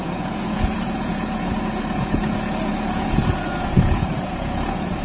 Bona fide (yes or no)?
no